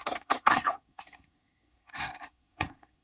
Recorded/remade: remade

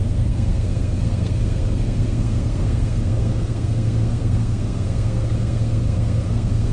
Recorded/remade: remade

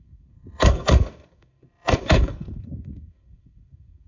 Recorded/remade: remade